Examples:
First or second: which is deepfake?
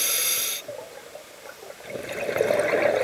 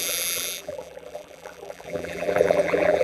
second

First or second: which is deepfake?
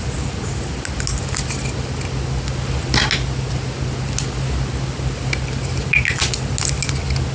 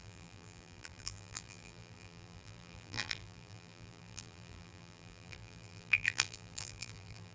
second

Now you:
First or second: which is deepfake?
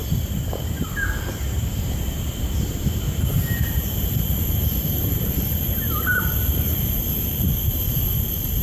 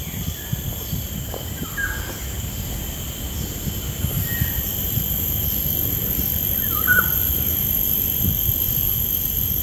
first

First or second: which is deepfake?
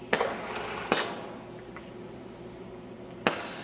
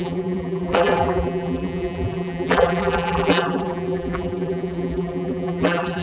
second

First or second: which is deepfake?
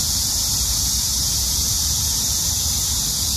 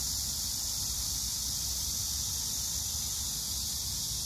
first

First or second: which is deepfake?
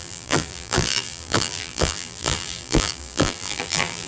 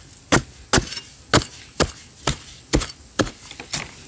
first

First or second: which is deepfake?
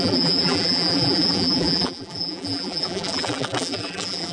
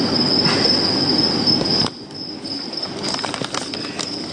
first